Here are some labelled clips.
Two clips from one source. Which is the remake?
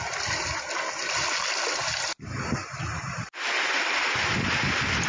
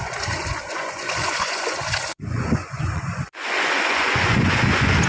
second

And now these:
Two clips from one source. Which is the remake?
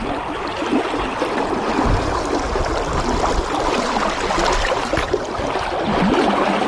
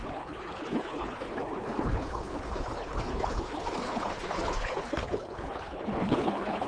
second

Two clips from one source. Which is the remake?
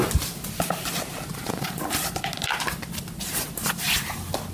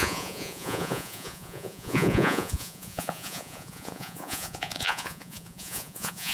second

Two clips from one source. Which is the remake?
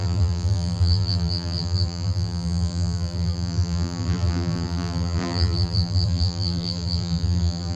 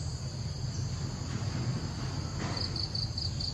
first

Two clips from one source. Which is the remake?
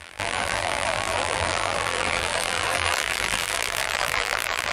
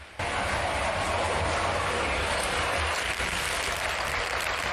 first